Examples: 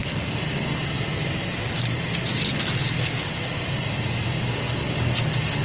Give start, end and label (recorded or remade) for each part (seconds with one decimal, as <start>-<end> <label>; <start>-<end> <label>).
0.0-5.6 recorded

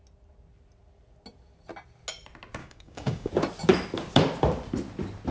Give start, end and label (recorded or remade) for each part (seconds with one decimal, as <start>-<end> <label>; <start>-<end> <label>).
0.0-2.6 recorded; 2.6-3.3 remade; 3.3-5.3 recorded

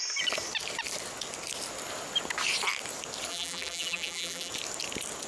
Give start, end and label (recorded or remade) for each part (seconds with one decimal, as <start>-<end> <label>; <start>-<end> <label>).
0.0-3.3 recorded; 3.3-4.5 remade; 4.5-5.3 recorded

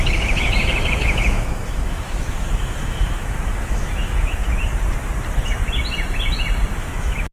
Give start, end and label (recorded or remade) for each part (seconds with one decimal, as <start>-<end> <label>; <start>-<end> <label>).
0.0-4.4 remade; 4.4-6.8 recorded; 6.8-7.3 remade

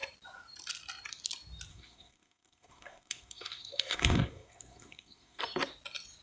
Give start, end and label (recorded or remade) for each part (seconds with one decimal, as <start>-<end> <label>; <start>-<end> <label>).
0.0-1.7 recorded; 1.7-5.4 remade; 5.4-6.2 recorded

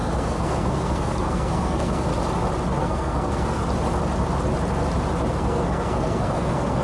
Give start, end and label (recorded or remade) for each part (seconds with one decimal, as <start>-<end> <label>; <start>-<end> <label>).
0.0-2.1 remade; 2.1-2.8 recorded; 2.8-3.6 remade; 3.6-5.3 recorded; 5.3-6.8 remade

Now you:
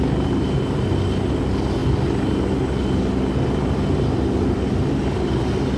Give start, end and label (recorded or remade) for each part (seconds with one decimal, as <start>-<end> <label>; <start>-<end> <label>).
0.0-5.8 recorded